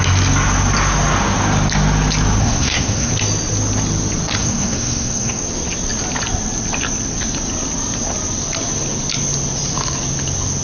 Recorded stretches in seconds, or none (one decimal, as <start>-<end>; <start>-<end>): 0.0-2.4; 3.1-4.4; 5.4-10.6